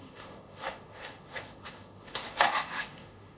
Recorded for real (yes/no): no